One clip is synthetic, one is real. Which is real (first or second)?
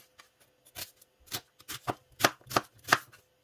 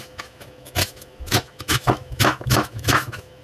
first